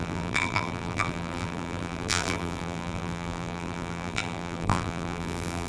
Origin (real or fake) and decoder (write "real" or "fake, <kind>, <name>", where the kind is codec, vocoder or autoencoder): fake, vocoder, BigVGAN v2